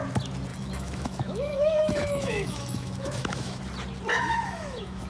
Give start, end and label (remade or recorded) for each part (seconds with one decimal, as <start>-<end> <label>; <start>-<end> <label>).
0.0-0.5 recorded; 0.5-3.6 remade; 3.6-4.1 recorded; 4.1-5.1 remade